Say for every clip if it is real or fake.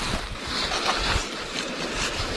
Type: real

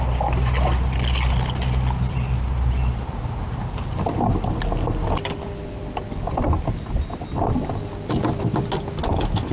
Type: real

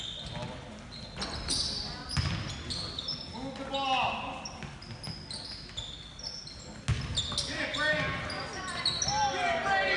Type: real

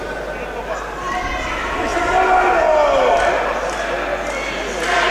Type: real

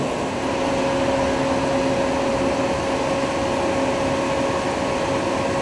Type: real